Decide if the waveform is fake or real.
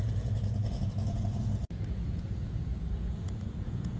fake